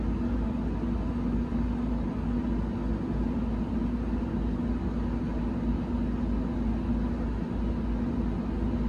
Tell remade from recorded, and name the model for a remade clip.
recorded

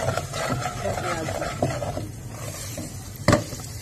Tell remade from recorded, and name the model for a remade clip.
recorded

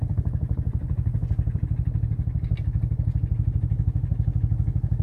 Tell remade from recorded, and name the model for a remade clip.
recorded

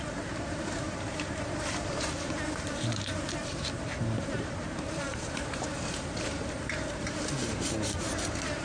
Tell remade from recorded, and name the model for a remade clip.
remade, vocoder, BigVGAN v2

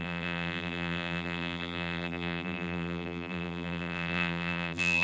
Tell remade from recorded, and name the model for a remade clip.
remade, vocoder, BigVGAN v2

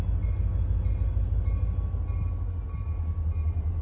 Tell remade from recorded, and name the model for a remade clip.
recorded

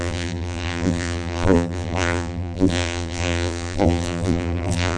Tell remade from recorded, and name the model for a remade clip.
remade, vocoder, BigVGAN v2